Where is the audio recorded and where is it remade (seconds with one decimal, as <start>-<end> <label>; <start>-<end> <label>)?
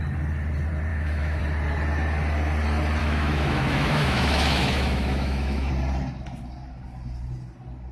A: 0.0-0.9 recorded; 0.9-1.4 remade; 1.4-3.0 recorded; 3.0-5.7 remade; 5.7-7.9 recorded